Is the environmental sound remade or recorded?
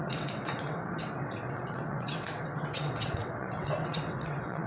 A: remade